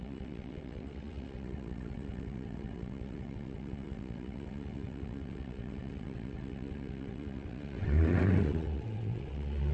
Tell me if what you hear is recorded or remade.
remade